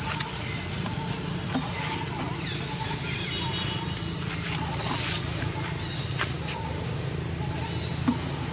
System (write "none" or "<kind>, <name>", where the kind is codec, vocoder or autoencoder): vocoder, BigVGAN v2